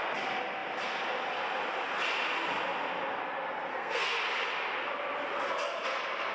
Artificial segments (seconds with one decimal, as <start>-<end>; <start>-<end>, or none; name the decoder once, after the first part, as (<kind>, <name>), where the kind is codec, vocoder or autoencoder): 3.7-4.2 (codec, SNAC)